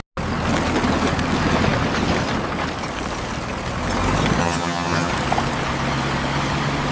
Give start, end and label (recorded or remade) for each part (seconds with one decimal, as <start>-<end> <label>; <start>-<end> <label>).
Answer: 0.0-4.4 recorded; 4.4-5.1 remade; 5.1-6.9 recorded